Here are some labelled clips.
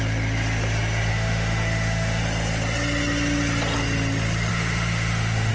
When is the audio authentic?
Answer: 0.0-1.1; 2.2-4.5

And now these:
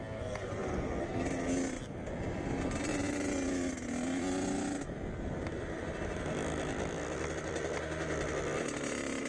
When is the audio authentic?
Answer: 0.6-2.2; 2.9-6.0

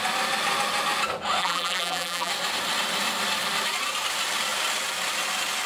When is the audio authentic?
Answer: 0.0-1.4; 2.3-5.7

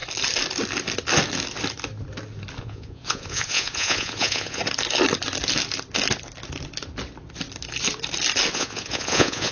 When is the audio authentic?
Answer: 0.0-2.6; 4.6-8.5

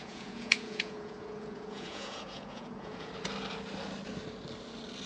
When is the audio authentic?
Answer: 3.1-5.1